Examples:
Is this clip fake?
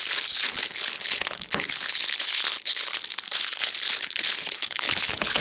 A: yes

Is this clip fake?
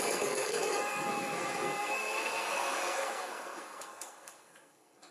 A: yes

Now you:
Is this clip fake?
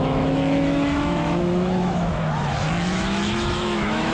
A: yes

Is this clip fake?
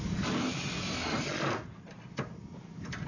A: no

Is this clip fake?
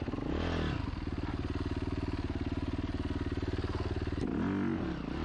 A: no